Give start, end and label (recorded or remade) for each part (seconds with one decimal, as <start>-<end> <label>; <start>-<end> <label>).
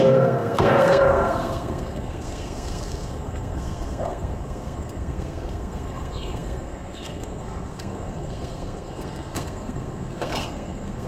0.0-11.1 remade